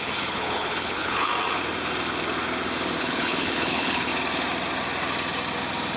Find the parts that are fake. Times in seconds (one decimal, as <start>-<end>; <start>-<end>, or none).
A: 0.0-1.3; 3.0-4.1